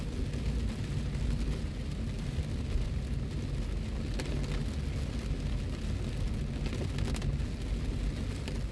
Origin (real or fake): real